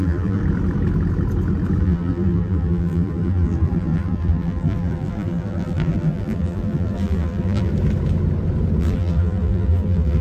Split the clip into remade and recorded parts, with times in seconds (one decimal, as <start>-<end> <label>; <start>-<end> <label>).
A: 0.0-0.4 remade; 0.4-1.8 recorded; 1.8-7.7 remade; 7.7-8.8 recorded; 8.8-10.2 remade